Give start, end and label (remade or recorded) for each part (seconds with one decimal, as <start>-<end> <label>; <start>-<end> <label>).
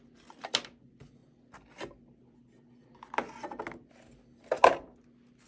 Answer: 0.0-5.5 recorded